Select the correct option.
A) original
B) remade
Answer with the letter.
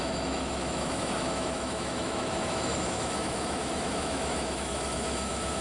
B